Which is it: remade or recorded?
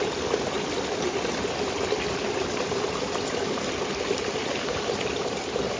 recorded